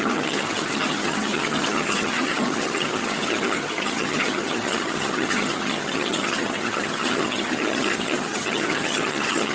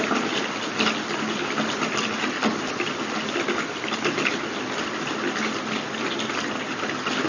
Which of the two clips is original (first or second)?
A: second